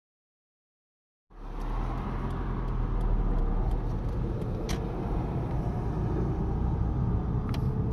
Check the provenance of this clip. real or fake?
real